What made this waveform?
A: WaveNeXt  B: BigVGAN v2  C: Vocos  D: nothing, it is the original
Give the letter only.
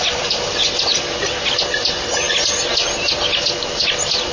D